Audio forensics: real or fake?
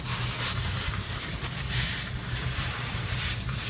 fake